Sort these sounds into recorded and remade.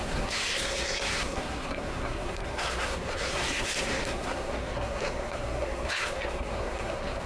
remade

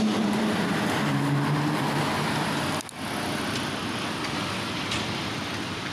recorded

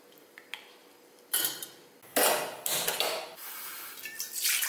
recorded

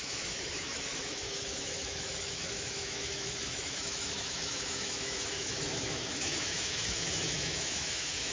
remade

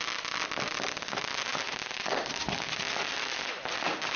recorded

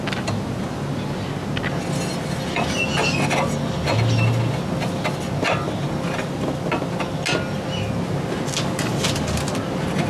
recorded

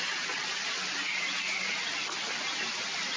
recorded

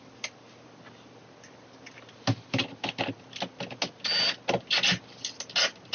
recorded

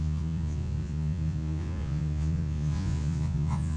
remade